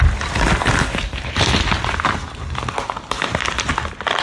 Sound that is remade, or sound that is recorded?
recorded